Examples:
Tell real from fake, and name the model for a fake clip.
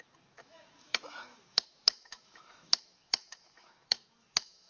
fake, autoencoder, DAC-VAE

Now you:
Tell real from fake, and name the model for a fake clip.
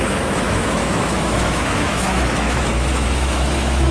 fake, autoencoder, DAC-VAE